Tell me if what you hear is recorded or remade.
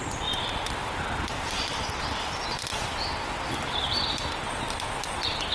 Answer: recorded